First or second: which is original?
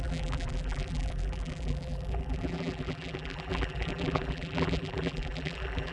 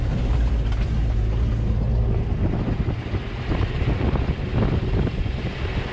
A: second